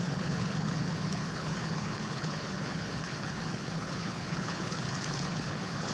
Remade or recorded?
remade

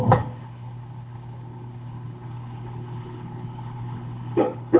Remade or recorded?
remade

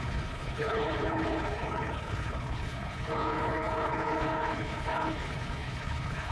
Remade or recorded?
remade